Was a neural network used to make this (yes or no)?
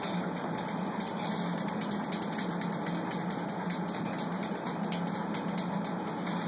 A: no